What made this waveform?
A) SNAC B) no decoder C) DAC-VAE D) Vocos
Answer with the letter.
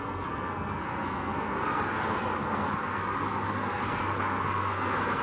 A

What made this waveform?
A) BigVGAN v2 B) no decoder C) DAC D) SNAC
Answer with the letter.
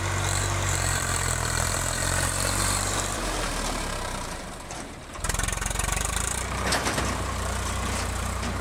A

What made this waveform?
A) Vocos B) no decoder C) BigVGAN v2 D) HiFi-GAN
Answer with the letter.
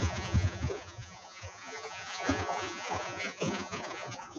A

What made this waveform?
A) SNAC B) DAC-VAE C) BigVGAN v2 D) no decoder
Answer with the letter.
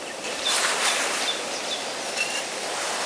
C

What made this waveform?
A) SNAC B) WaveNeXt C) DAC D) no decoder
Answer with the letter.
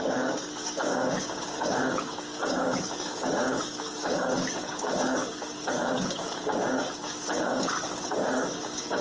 C